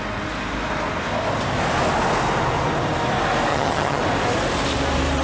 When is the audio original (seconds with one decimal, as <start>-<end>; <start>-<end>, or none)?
0.0-3.5; 4.0-5.2